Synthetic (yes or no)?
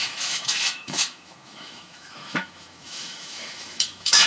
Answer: yes